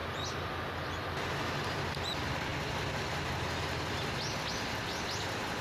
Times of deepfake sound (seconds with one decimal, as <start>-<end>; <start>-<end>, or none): none